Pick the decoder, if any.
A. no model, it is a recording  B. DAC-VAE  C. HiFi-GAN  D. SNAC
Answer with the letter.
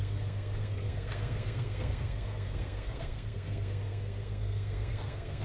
D